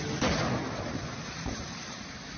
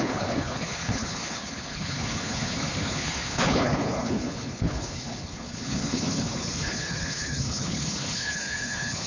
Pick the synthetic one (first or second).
second